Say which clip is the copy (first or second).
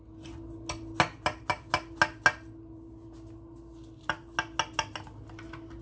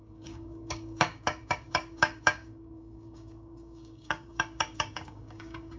second